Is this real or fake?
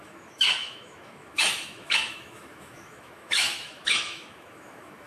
fake